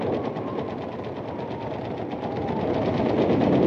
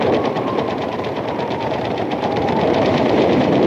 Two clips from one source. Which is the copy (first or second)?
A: second